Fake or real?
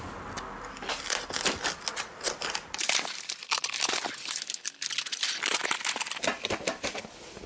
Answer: real